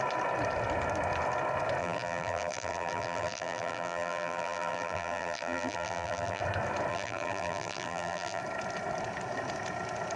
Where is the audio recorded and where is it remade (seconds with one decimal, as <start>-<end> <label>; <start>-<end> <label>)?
0.0-1.8 recorded; 1.8-6.4 remade; 6.4-6.9 recorded; 6.9-8.4 remade; 8.4-10.2 recorded